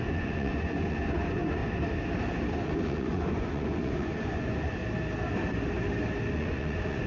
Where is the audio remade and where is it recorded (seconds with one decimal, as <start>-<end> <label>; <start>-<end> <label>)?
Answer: 0.0-1.6 remade; 1.6-2.6 recorded; 2.6-4.8 remade; 4.8-6.3 recorded; 6.3-7.1 remade